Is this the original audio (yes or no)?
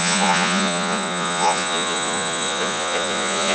no